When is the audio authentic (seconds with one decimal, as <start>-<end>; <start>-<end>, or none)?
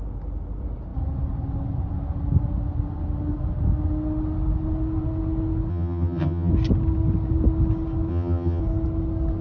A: 0.0-5.7; 6.5-8.1; 8.6-9.4